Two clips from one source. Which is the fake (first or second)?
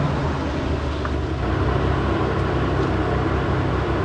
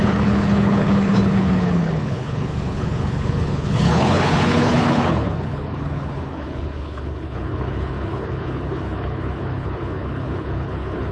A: second